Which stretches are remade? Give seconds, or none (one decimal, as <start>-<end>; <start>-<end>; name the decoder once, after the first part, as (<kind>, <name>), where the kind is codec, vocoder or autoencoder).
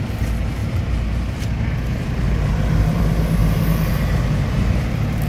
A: 0.6-3.0 (vocoder, BigVGAN v2); 3.4-5.3